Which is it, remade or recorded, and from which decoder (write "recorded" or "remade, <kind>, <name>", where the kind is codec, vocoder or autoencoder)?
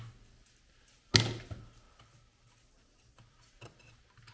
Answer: recorded